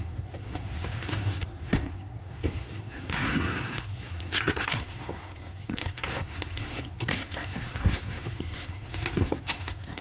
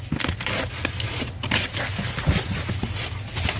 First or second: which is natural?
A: second